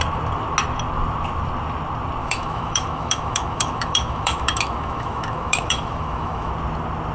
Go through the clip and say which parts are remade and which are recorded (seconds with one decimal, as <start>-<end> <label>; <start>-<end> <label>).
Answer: 0.0-2.2 recorded; 2.2-6.5 remade; 6.5-7.1 recorded